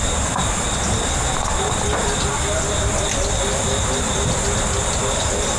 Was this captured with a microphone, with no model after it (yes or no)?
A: yes